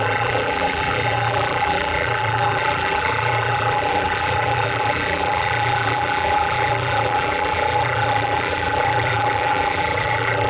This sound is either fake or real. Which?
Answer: fake